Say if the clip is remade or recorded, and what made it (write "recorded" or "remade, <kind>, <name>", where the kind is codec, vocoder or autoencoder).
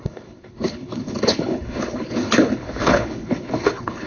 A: remade, codec, HILCodec